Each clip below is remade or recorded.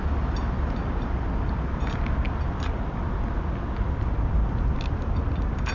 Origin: recorded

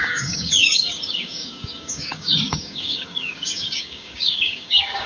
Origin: remade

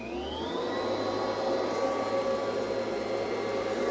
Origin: recorded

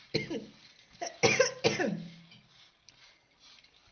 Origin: recorded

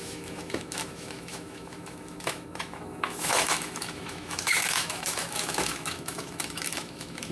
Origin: remade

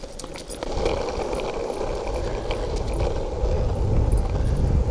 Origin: recorded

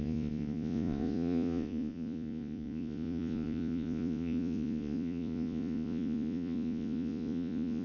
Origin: remade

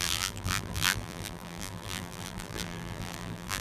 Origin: remade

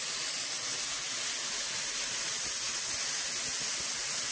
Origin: recorded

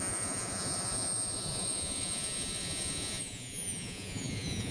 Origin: remade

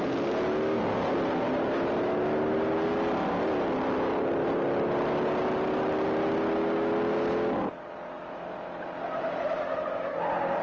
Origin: recorded